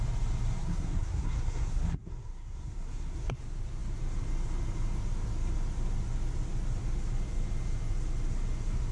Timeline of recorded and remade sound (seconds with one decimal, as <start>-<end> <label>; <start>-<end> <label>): 0.0-0.6 recorded; 0.6-3.4 remade; 3.4-8.9 recorded